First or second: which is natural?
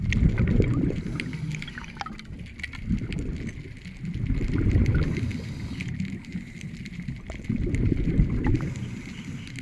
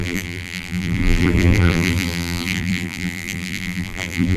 first